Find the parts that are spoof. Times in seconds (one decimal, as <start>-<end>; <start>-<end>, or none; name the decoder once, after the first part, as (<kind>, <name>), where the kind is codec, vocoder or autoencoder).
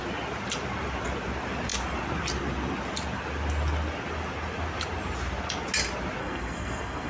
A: 6.2-7.1 (codec, SNAC)